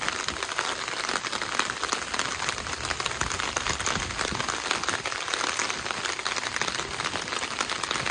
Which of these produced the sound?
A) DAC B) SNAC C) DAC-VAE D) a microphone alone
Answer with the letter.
D